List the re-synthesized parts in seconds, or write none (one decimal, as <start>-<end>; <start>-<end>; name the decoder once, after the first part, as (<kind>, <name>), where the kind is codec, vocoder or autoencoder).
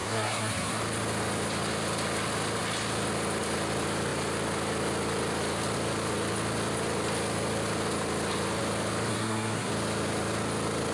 0.0-0.8 (codec, SNAC); 9.1-9.7